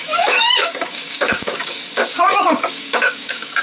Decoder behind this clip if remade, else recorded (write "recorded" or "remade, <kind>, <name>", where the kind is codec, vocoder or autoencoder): remade, codec, DAC